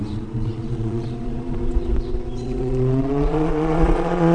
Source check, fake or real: fake